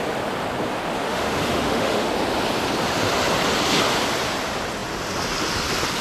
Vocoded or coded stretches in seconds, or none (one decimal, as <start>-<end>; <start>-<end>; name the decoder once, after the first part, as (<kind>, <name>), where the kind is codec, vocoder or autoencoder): 1.1-2.1 (autoencoder, DAC-VAE)